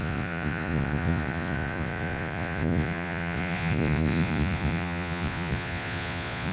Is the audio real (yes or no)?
no